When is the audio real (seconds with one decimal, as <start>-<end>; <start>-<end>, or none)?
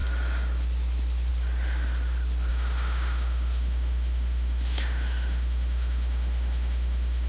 0.0-2.5